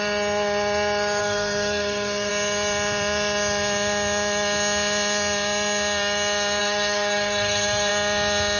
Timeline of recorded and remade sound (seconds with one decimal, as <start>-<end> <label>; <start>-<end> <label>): 0.0-1.2 recorded; 1.2-2.3 remade; 2.3-6.6 recorded; 6.6-7.9 remade; 7.9-8.6 recorded